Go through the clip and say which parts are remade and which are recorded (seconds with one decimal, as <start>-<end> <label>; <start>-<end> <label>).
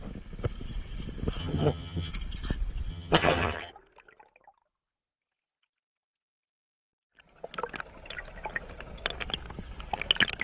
0.0-1.4 recorded; 1.4-2.1 remade; 2.1-2.9 recorded; 2.9-3.7 remade; 3.7-10.4 recorded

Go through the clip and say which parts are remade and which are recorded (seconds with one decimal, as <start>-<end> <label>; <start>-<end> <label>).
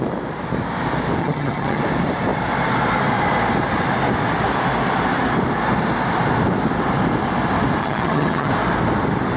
0.0-1.2 recorded; 1.2-1.8 remade; 1.8-7.8 recorded; 7.8-8.5 remade; 8.5-9.4 recorded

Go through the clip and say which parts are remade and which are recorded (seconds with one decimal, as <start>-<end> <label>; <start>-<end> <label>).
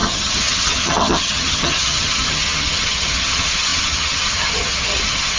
0.0-5.4 remade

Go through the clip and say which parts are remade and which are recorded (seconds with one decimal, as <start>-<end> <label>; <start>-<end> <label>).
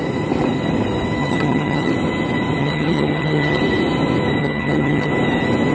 0.0-1.2 recorded; 1.2-1.9 remade; 1.9-2.6 recorded; 2.6-3.6 remade; 3.6-4.4 recorded; 4.4-5.1 remade; 5.1-5.7 recorded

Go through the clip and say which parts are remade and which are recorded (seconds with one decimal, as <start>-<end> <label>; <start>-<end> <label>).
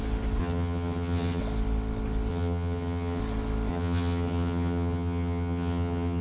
0.0-0.4 recorded; 0.4-1.4 remade; 1.4-2.3 recorded; 2.3-3.2 remade; 3.2-3.7 recorded; 3.7-6.2 remade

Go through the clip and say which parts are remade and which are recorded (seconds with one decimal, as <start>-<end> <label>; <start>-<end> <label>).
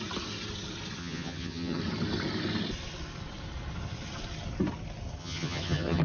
0.0-1.0 recorded; 1.0-1.8 remade; 1.8-5.2 recorded; 5.2-6.0 remade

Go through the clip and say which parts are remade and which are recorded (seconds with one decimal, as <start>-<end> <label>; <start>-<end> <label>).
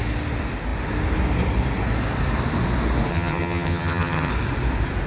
0.0-3.1 recorded; 3.1-4.3 remade; 4.3-5.1 recorded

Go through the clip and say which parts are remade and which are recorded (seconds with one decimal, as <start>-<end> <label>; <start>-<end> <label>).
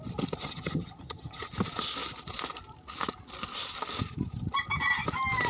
0.0-0.4 recorded; 0.4-1.5 remade; 1.5-5.5 recorded